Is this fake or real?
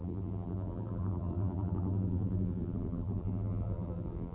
fake